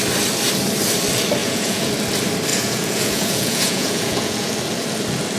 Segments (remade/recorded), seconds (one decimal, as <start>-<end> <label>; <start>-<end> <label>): 0.0-1.4 recorded; 1.4-1.9 remade; 1.9-2.5 recorded; 2.5-4.5 remade; 4.5-5.4 recorded